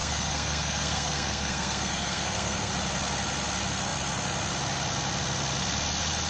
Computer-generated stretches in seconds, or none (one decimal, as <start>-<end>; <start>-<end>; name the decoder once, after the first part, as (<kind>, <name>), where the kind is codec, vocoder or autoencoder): 0.0-2.7 (codec, SNAC)